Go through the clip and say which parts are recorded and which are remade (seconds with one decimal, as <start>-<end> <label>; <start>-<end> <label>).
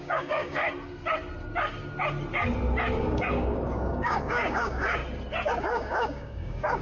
0.0-0.6 remade; 0.6-3.0 recorded; 3.0-5.0 remade; 5.0-5.6 recorded; 5.6-6.8 remade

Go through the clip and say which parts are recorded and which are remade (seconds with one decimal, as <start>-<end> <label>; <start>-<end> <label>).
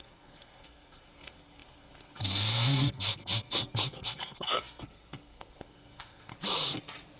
0.0-6.3 remade; 6.3-7.2 recorded